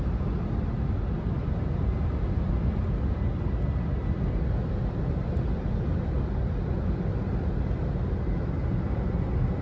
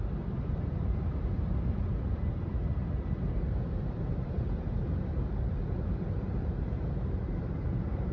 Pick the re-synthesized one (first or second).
second